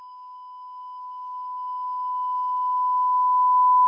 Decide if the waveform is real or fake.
fake